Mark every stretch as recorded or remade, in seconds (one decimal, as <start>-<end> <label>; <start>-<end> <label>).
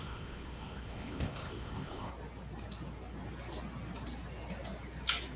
0.0-2.1 remade; 2.1-5.4 recorded